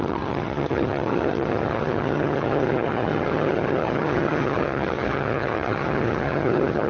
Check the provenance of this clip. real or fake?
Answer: fake